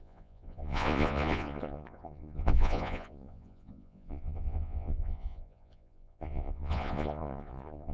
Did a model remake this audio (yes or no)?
yes